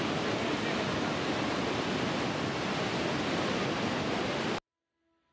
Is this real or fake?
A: real